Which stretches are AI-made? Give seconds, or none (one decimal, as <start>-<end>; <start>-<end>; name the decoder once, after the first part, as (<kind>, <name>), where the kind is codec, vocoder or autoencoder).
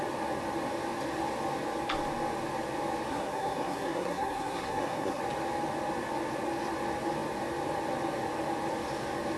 3.1-5.2 (codec, SNAC)